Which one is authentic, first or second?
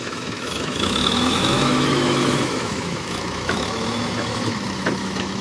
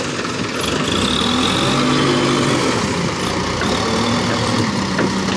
second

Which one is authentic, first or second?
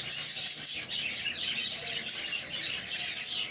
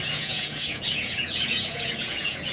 first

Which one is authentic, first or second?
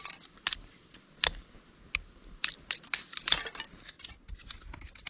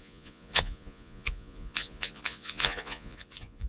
first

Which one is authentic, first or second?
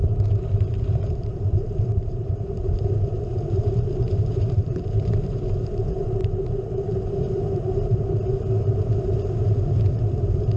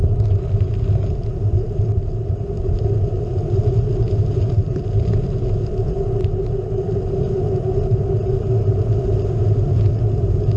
second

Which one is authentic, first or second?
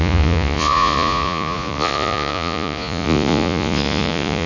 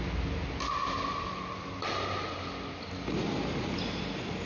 second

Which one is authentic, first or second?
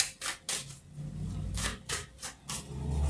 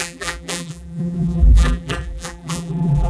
first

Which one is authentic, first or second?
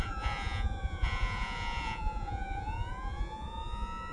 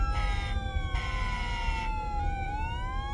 second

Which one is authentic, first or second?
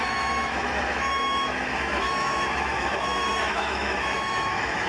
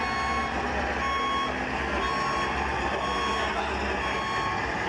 second